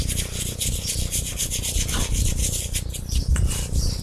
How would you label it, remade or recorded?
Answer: remade